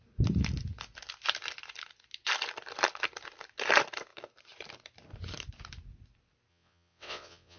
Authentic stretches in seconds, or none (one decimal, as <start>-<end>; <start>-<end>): 0.0-6.5

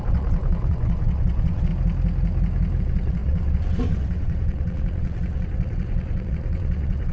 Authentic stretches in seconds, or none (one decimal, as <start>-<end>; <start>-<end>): 1.7-2.8

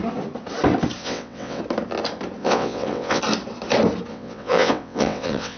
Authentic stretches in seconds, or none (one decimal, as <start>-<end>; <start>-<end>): 0.0-1.0; 1.6-2.4; 3.2-4.1